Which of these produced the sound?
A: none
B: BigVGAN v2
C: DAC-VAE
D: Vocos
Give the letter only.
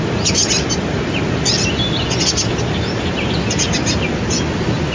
A